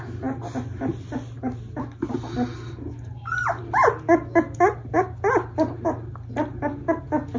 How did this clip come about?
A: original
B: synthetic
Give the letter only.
A